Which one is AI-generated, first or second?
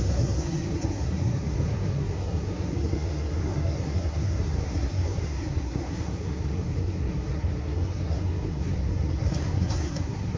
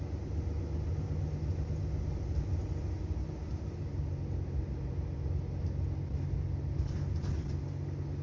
first